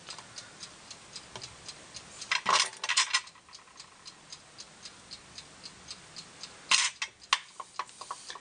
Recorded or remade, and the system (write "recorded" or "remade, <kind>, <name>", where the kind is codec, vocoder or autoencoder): recorded